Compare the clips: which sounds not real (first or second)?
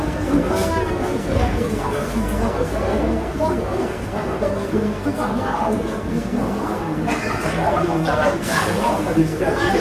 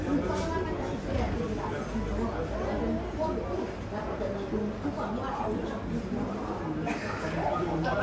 first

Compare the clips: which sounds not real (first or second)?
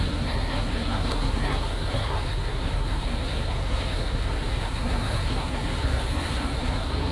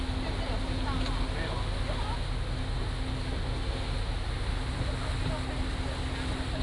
first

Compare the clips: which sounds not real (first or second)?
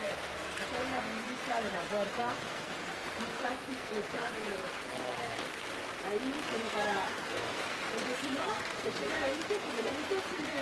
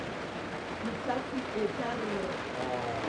first